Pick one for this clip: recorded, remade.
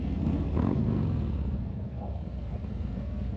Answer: remade